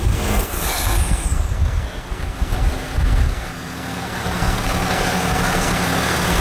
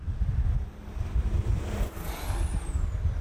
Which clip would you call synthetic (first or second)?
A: first